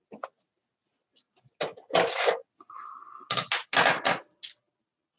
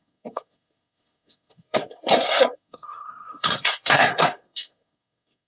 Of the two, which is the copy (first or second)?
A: second